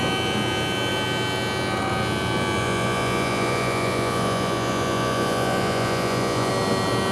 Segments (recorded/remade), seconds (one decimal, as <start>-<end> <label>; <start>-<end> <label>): 0.0-2.6 recorded; 2.6-6.5 remade; 6.5-7.1 recorded